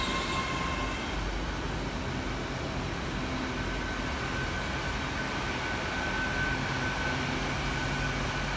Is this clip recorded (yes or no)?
yes